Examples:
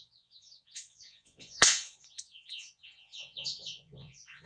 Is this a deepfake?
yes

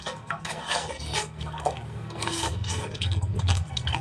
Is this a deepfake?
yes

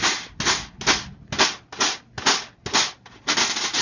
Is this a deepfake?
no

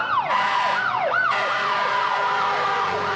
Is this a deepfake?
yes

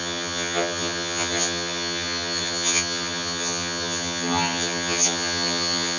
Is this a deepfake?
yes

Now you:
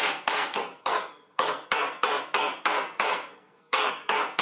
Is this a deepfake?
yes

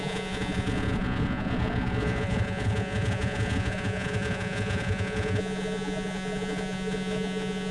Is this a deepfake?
yes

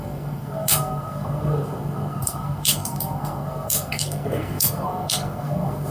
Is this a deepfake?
yes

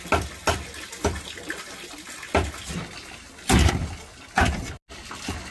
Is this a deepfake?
no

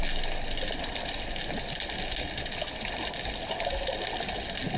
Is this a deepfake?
no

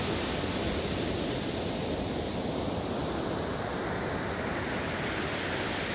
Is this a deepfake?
no